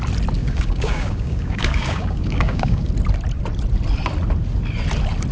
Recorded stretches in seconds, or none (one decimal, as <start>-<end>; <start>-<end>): 0.0-0.4; 2.9-5.3